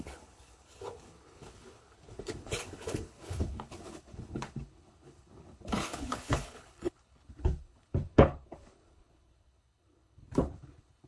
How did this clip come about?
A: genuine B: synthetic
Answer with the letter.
B